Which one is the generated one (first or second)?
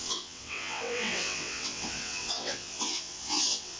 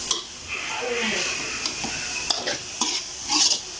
first